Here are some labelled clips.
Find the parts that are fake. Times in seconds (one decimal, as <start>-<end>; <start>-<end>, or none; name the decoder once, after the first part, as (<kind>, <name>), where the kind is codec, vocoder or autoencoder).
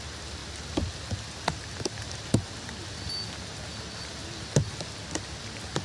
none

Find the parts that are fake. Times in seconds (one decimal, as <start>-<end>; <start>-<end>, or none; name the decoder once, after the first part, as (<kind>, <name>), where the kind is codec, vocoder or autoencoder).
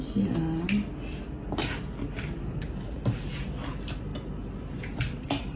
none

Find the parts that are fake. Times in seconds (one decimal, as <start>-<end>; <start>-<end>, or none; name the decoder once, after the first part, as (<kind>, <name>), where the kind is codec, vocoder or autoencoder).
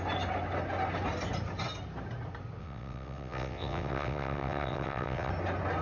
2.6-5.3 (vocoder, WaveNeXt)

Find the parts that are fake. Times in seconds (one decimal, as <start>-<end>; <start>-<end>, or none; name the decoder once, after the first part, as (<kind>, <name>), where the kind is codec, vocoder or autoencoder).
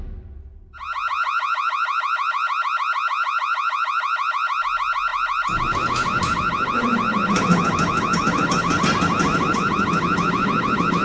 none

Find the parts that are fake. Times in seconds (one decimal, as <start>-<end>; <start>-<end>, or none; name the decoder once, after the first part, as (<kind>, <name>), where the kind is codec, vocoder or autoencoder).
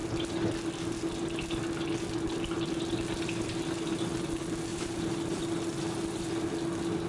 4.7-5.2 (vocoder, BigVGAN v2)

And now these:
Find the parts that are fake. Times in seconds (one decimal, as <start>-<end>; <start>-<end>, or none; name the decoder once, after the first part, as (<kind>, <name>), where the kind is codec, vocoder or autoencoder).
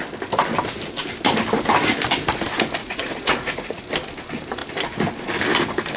2.8-3.8 (vocoder, Vocos)